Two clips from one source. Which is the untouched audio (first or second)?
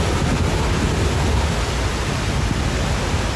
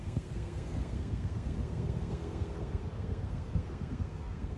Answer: first